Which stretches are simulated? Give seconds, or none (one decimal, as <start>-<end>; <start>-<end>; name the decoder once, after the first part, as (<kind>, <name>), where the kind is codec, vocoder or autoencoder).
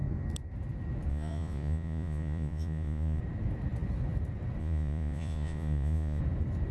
1.1-3.2 (vocoder, Vocos); 4.6-6.2